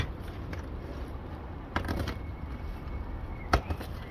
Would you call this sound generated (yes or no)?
yes